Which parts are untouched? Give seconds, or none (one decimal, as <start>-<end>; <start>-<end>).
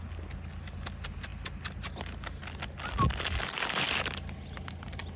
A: 0.0-5.2